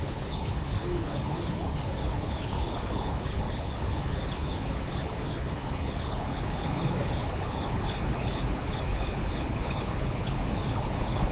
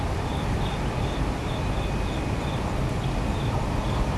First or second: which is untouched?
second